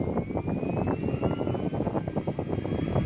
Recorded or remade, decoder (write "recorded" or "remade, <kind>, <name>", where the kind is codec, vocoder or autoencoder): recorded